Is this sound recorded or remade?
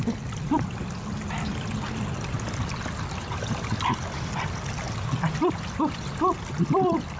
recorded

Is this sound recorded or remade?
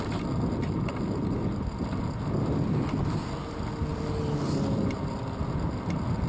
recorded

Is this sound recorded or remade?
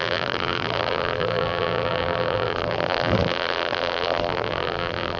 remade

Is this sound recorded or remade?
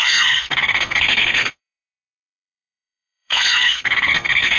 remade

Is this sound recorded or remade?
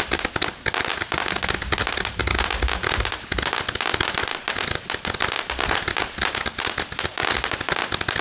recorded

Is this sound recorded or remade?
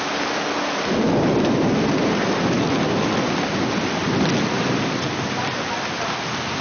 recorded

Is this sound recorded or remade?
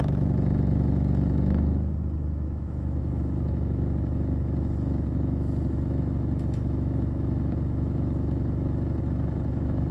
remade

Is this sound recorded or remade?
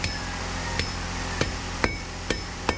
remade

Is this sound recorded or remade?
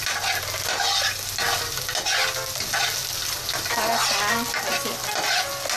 recorded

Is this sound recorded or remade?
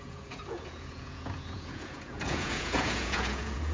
remade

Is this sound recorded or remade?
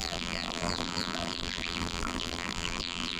remade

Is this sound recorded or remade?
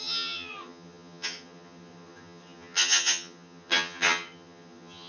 remade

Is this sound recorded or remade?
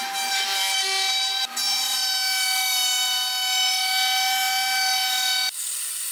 recorded